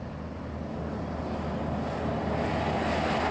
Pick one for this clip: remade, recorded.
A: recorded